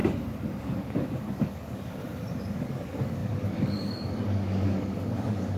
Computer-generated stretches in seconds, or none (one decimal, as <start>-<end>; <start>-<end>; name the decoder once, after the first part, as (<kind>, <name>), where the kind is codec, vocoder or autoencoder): 0.6-2.0 (codec, DAC); 2.5-5.6

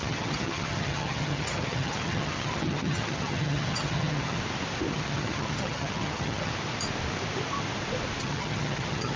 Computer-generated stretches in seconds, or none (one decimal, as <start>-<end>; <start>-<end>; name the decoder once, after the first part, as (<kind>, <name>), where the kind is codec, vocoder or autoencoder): 0.0-4.4 (vocoder, HiFi-GAN); 4.9-6.5; 8.2-9.2

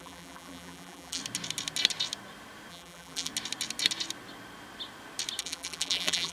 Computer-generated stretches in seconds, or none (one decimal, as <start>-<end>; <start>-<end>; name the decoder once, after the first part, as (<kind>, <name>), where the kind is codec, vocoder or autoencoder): 0.0-1.2 (vocoder, BigVGAN v2); 2.7-3.3; 5.4-6.3

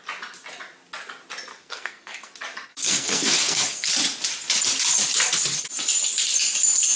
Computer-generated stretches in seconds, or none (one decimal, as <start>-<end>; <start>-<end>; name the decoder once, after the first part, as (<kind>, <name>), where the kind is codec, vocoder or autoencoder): 1.5-2.3 (codec, SNAC); 2.7-3.9

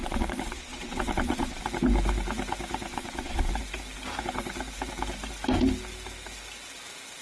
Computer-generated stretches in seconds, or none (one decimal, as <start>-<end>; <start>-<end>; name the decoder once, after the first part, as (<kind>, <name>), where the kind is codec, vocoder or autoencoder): 0.0-1.6 (vocoder, Vocos); 2.9-3.5

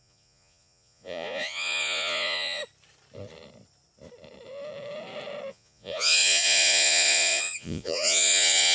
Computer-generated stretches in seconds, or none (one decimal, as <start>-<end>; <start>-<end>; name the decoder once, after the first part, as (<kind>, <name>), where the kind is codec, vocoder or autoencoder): 0.0-2.6 (vocoder, Vocos); 5.5-8.7

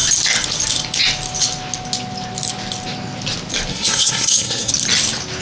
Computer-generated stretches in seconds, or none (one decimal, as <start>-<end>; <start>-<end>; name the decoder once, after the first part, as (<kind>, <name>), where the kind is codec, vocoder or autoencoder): 3.7-4.7 (codec, SNAC)